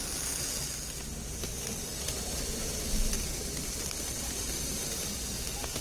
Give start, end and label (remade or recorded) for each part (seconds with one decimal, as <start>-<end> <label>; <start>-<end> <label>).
0.0-1.3 recorded; 1.3-4.8 remade; 4.8-5.8 recorded